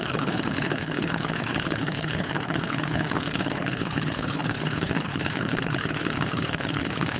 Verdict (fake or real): fake